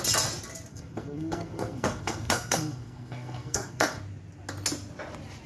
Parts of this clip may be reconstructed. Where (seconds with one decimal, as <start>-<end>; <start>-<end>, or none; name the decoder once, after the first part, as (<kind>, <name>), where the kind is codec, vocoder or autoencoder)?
0.7-4.0 (codec, SNAC)